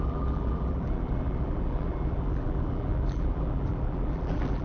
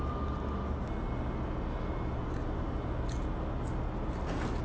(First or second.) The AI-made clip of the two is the first